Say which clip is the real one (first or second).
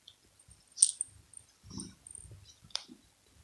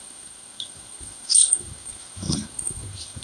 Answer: first